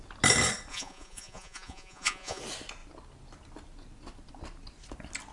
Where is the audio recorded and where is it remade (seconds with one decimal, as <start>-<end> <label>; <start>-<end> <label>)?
0.0-0.7 recorded; 0.7-2.4 remade; 2.4-5.3 recorded